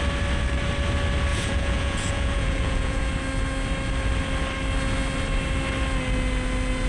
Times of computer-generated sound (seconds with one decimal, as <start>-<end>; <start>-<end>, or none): 1.3-3.1